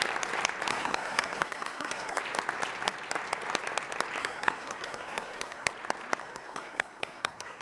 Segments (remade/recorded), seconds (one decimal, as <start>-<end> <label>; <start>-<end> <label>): 0.0-0.7 recorded; 0.7-2.2 remade; 2.2-4.2 recorded; 4.2-5.7 remade; 5.7-6.2 recorded; 6.2-7.6 remade